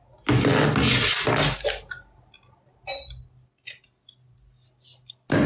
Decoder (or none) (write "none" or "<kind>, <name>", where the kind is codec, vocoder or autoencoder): none